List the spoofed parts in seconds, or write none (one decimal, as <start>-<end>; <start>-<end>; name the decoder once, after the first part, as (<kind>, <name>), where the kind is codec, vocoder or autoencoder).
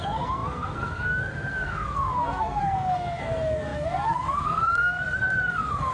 0.0-5.9 (codec, SNAC)